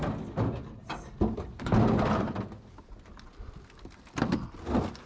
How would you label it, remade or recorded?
recorded